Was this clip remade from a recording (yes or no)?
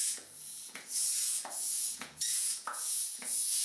yes